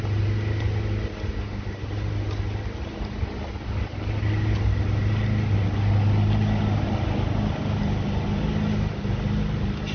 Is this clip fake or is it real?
real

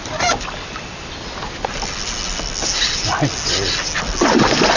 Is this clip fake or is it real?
real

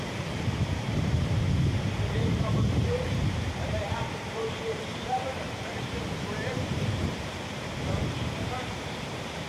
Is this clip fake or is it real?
fake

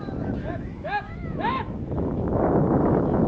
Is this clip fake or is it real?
fake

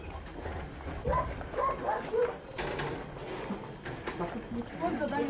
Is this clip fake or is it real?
real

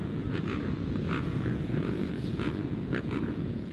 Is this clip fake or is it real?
fake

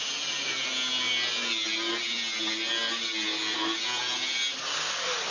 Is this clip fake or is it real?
real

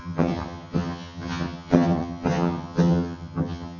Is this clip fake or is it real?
fake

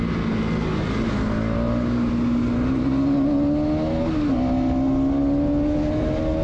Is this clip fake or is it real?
real